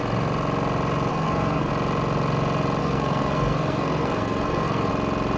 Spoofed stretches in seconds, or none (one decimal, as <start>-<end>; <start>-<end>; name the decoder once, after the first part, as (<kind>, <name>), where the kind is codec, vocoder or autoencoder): 1.1-1.7 (codec, SNAC); 2.8-4.9